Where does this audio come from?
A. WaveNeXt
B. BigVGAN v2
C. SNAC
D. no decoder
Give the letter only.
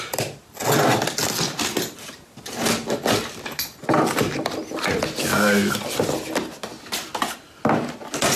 D